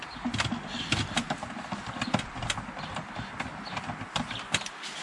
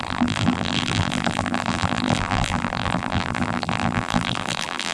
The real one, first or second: first